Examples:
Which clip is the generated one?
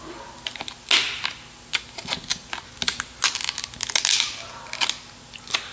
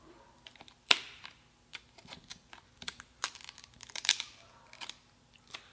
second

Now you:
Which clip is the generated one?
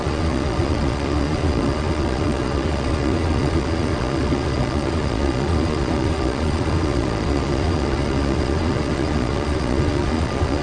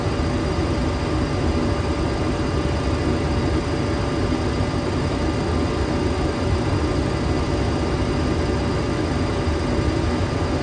first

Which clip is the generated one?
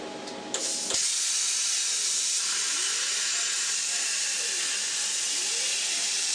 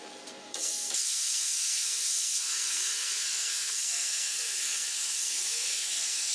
second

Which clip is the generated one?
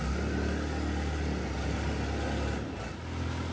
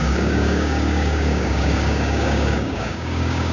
second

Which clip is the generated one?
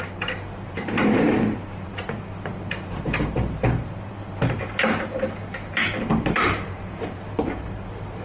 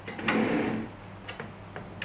first